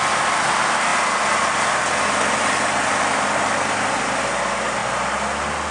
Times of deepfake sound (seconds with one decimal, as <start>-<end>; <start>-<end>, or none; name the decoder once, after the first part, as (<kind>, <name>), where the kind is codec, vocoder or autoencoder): 0.0-0.9 (vocoder, BigVGAN v2); 2.3-4.8